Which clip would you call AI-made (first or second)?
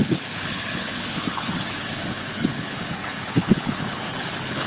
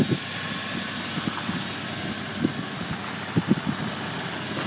first